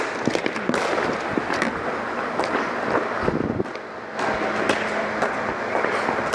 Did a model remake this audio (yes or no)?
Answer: no